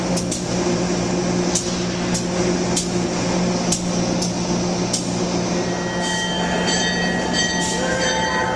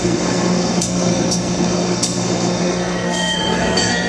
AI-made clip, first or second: second